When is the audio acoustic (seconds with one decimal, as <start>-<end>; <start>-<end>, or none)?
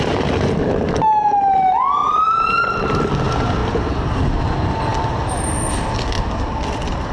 0.0-2.0; 3.0-7.1